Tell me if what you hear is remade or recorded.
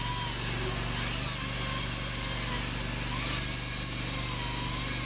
recorded